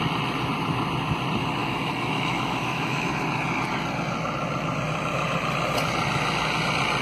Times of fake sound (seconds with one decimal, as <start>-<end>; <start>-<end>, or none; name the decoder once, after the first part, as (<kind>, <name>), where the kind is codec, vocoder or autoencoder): 1.6-3.2 (autoencoder, DAC-VAE)